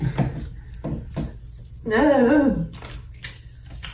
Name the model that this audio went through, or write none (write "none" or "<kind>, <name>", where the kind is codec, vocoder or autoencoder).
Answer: none